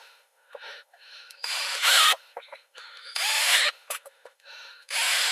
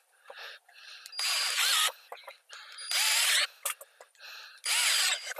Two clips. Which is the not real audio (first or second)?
first